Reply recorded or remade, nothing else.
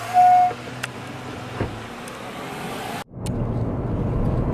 recorded